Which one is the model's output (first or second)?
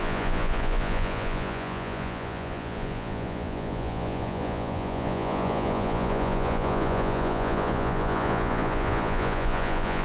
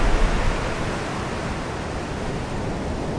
first